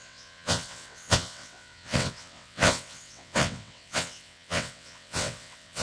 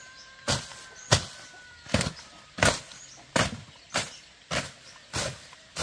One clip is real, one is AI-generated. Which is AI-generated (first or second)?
first